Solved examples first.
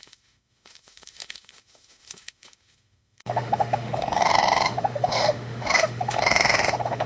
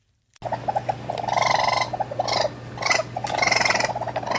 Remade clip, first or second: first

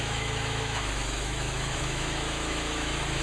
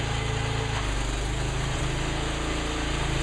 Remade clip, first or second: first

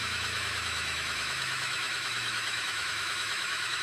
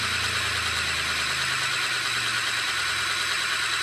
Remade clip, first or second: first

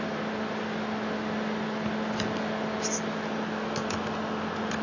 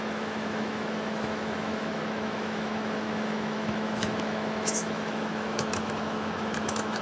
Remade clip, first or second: second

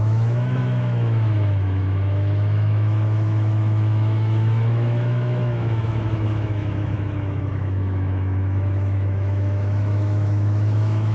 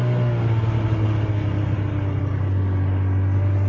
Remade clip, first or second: first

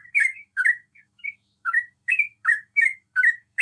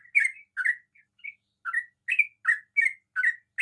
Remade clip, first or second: first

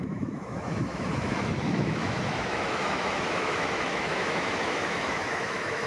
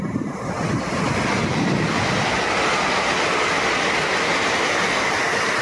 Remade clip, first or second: first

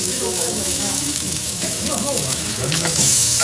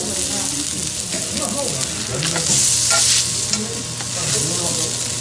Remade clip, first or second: first